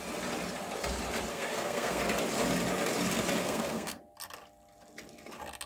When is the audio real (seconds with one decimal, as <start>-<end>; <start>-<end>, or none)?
0.0-1.3; 2.0-3.4; 4.0-5.7